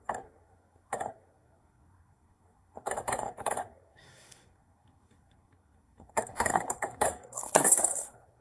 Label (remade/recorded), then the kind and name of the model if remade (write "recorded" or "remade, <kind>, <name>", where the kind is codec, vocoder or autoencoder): remade, codec, SNAC